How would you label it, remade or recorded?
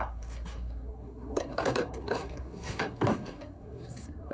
remade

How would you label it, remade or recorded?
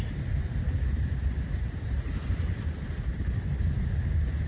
recorded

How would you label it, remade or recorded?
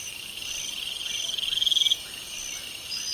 recorded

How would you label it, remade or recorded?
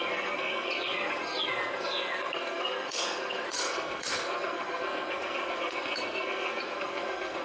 remade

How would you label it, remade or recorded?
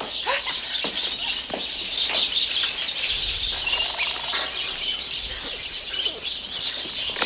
recorded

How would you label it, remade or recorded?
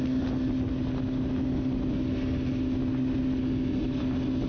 recorded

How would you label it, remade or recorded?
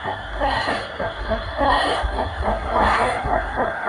remade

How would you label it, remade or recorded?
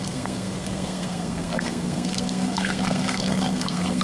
remade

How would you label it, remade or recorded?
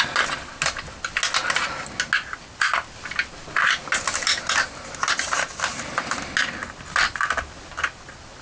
recorded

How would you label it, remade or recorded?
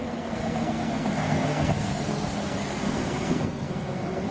remade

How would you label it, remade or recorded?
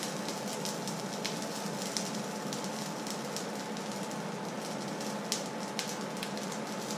recorded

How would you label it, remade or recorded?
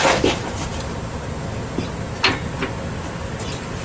recorded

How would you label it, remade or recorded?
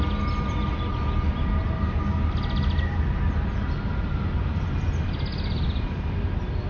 recorded